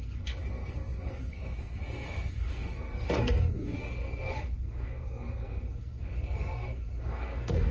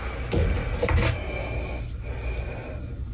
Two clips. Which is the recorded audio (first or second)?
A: second